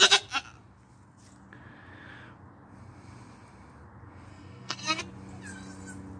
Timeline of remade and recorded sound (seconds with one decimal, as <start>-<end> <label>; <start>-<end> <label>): 0.0-4.3 recorded; 4.3-5.0 remade; 5.0-6.2 recorded